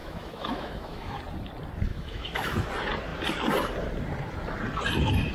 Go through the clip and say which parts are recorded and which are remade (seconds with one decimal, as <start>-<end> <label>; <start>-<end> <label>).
0.0-1.2 remade; 1.2-1.9 recorded; 1.9-2.7 remade; 2.7-5.3 recorded

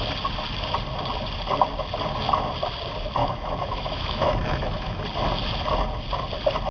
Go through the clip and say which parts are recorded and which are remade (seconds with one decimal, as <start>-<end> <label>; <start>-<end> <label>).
0.0-3.2 recorded; 3.2-5.0 remade; 5.0-6.7 recorded

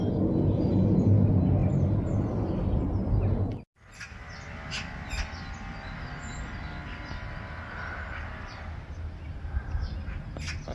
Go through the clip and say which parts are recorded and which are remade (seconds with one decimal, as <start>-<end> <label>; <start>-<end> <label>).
0.0-10.7 recorded

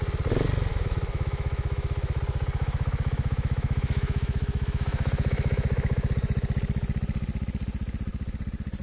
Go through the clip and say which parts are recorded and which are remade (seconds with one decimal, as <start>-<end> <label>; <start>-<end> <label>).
0.0-0.7 recorded; 0.7-2.2 remade; 2.2-2.6 recorded; 2.6-6.1 remade; 6.1-8.8 recorded

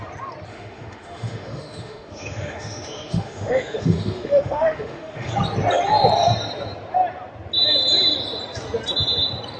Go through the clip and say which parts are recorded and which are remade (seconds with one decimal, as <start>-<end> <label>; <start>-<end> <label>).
0.0-0.5 recorded; 0.5-5.3 remade; 5.3-9.6 recorded

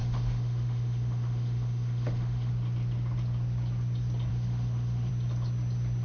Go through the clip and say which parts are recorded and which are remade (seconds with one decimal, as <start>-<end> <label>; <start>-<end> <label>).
0.0-2.5 remade; 2.5-4.3 recorded; 4.3-5.1 remade; 5.1-6.0 recorded